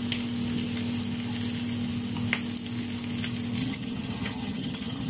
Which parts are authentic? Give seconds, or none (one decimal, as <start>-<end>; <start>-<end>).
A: 0.0-3.6